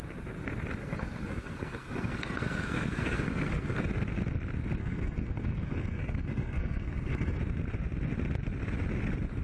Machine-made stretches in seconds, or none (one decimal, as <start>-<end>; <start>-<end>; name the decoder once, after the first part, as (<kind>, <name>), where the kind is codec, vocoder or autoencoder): 0.8-3.8 (codec, SNAC); 4.8-7.4